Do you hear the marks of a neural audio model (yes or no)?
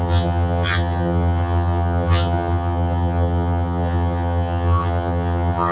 yes